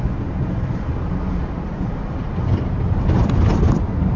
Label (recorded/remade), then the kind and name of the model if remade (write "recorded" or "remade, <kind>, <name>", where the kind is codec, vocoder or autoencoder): recorded